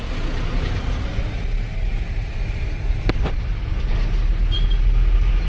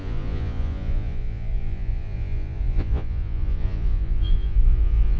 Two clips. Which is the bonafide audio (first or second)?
first